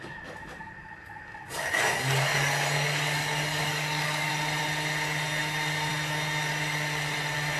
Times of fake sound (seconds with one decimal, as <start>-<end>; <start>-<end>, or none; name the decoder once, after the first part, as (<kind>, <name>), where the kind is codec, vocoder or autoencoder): 0.0-4.3 (codec, DAC)